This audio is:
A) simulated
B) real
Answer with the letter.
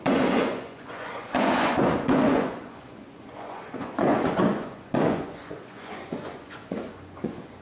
A